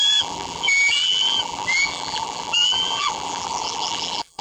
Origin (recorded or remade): remade